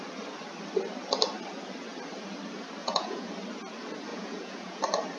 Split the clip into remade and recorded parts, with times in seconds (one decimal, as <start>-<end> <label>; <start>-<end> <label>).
0.0-2.8 recorded; 2.8-3.3 remade; 3.3-4.1 recorded; 4.1-4.8 remade; 4.8-5.2 recorded